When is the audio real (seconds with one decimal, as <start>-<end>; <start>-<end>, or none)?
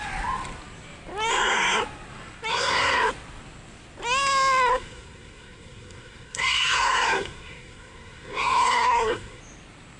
0.0-1.3; 1.8-2.5; 3.1-4.7; 9.4-10.0